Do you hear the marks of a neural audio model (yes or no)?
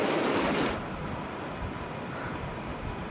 yes